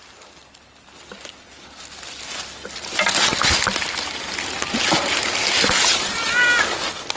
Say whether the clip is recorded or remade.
recorded